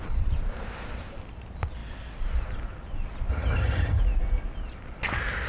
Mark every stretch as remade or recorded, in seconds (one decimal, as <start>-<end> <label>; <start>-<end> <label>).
0.0-3.3 recorded; 3.3-4.0 remade; 4.0-5.5 recorded